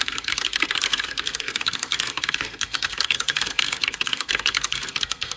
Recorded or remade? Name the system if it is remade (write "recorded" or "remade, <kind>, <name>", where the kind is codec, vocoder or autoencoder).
remade, codec, SNAC